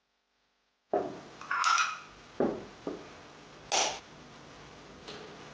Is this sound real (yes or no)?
yes